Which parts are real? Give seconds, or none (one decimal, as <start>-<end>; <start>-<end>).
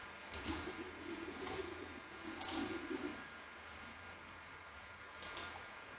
none